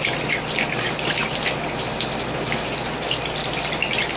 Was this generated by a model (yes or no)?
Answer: no